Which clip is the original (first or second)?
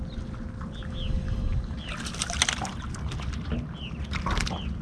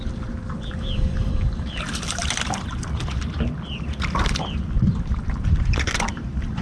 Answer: first